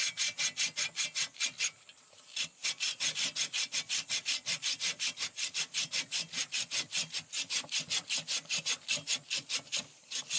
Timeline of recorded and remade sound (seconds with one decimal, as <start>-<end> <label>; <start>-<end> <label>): 0.0-10.4 recorded